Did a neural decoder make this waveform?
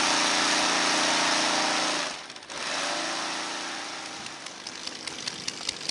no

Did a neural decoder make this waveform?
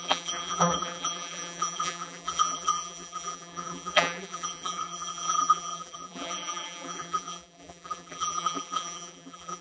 yes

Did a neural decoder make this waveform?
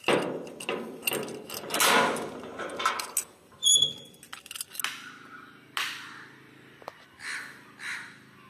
no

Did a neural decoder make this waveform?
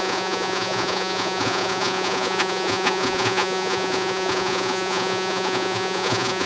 yes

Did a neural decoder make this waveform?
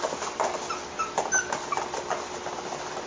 no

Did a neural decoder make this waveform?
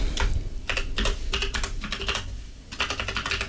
no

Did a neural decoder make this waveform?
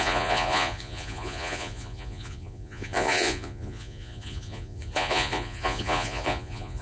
yes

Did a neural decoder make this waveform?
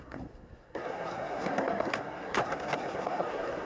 yes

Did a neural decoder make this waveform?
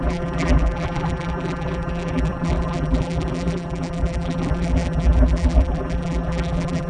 yes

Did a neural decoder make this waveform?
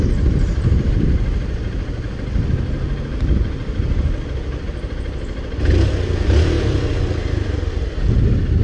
no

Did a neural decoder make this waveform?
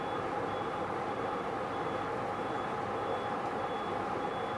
no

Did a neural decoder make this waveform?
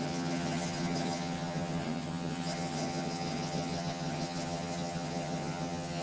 yes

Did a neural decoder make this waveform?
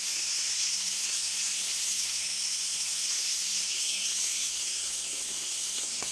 yes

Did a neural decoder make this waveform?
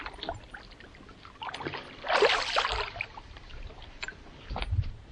no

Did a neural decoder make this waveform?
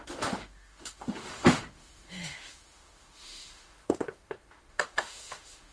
yes